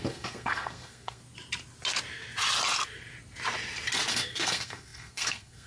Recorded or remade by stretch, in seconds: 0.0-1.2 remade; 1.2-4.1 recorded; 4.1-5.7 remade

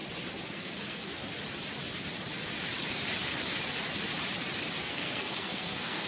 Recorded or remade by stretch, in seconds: 0.0-0.5 recorded; 0.5-1.1 remade; 1.1-4.8 recorded; 4.8-6.1 remade